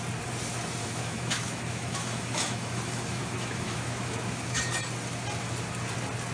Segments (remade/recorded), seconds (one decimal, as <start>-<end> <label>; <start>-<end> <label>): 0.0-0.8 recorded; 0.8-4.6 remade; 4.6-6.3 recorded